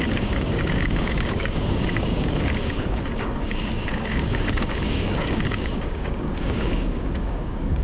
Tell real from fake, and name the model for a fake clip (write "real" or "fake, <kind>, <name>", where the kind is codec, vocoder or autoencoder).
fake, codec, DAC